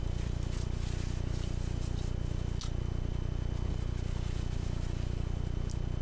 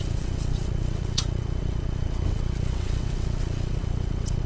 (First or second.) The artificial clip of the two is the second